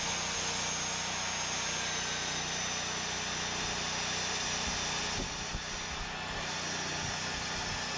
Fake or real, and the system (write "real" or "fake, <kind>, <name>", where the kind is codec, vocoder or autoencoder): real